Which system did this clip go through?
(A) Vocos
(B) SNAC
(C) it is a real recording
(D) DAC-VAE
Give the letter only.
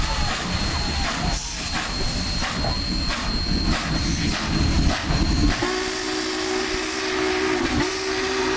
C